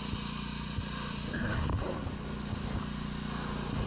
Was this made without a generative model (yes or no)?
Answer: yes